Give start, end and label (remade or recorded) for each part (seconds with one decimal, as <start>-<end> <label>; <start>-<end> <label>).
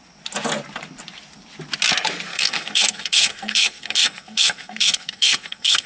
0.0-2.3 recorded; 2.3-5.9 remade